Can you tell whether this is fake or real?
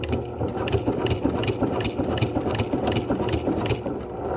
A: real